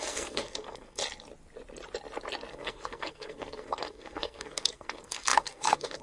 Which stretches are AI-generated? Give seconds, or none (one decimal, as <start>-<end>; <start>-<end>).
0.0-1.0; 2.5-6.0